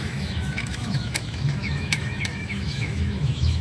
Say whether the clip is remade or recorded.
remade